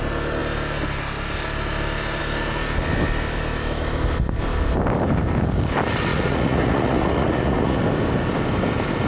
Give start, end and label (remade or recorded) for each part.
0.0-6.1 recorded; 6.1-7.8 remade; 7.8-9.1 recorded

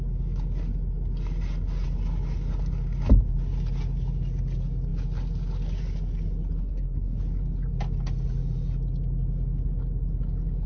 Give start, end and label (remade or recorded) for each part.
0.0-6.6 recorded; 6.6-7.2 remade; 7.2-10.7 recorded

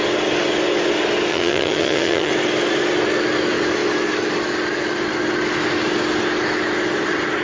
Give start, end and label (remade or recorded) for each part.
0.0-1.3 recorded; 1.3-2.3 remade; 2.3-7.4 recorded

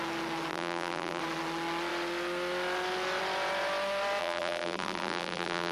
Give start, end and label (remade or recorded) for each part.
0.0-0.5 recorded; 0.5-1.2 remade; 1.2-4.2 recorded; 4.2-5.7 remade

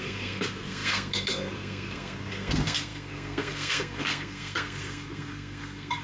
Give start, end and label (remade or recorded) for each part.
0.0-6.0 remade

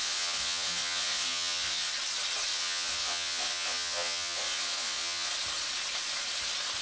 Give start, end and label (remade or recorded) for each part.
0.0-1.9 remade; 1.9-2.5 recorded; 2.5-5.3 remade; 5.3-6.8 recorded

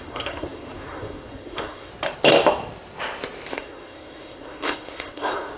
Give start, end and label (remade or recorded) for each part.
0.0-1.9 remade; 1.9-3.5 recorded; 3.5-5.6 remade